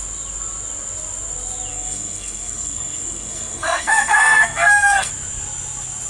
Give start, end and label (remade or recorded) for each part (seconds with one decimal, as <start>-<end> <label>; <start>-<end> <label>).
0.0-1.7 recorded; 1.7-5.1 remade; 5.1-6.1 recorded